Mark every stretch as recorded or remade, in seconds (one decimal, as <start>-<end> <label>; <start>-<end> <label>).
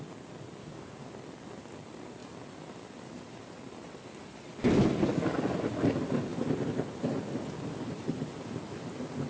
0.0-0.6 recorded; 0.6-1.1 remade; 1.1-9.3 recorded